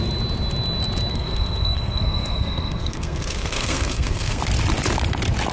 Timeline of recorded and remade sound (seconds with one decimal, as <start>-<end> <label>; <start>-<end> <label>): 0.0-1.1 recorded; 1.1-4.4 remade; 4.4-5.5 recorded